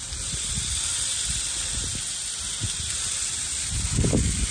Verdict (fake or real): real